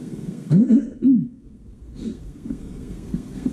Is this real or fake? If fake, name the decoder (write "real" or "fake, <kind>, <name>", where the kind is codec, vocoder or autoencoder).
fake, codec, SNAC